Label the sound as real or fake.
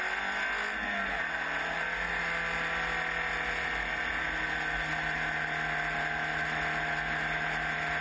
real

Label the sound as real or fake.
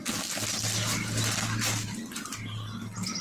real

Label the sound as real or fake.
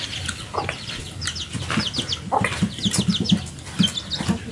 real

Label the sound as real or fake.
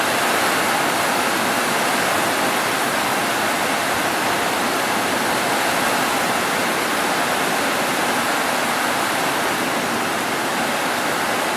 real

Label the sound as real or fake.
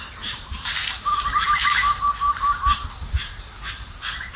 fake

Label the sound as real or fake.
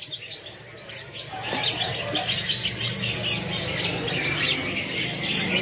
real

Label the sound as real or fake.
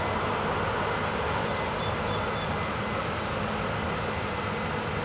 real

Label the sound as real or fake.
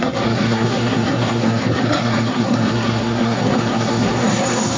fake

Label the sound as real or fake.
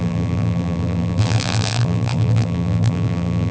fake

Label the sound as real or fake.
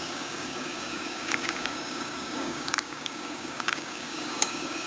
fake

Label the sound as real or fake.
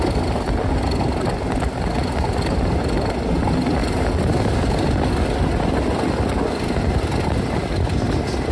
real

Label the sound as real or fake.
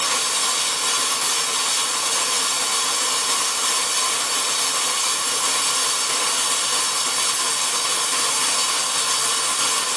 real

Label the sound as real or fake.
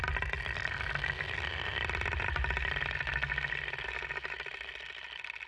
real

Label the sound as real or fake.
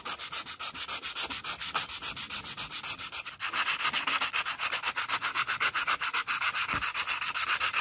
fake